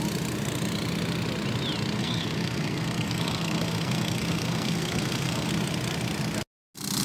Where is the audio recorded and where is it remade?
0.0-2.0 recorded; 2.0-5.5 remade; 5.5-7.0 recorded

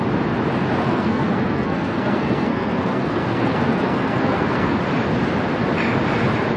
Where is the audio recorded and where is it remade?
0.0-0.8 recorded; 0.8-4.8 remade; 4.8-6.6 recorded

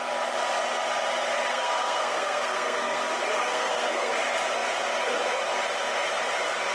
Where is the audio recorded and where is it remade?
0.0-1.5 recorded; 1.5-3.0 remade; 3.0-3.4 recorded; 3.4-4.1 remade; 4.1-6.7 recorded

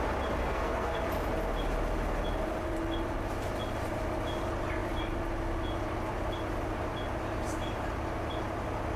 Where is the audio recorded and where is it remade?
0.0-0.4 recorded; 0.4-1.0 remade; 1.0-9.0 recorded

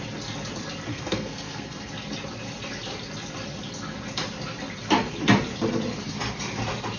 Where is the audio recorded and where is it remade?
0.0-0.9 recorded; 0.9-1.9 remade; 1.9-7.0 recorded